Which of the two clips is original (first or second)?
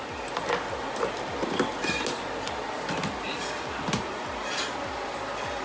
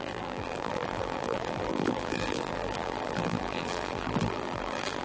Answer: first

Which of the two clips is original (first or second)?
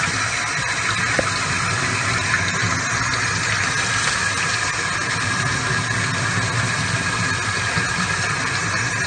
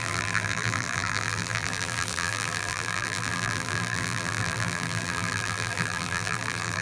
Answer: first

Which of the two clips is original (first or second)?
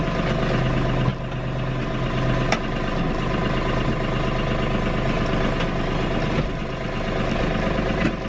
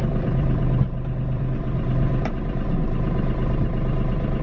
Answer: first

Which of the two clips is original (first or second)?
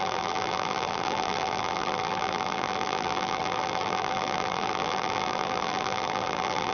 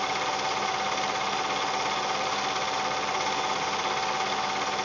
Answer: second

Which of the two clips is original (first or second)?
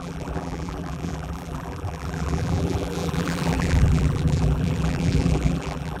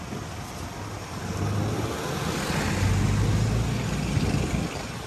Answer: second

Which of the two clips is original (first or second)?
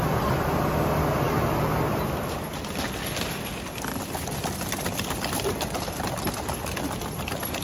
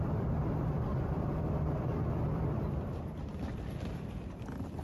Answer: first